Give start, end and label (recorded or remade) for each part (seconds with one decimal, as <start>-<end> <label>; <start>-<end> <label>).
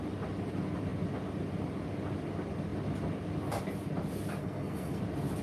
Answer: 0.0-4.4 recorded; 4.4-5.0 remade; 5.0-5.4 recorded